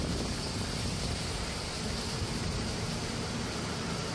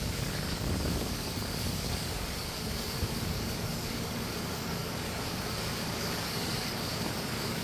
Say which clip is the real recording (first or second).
first